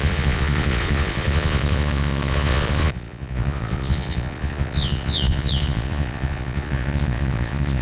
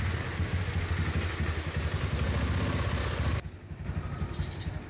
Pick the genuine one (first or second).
second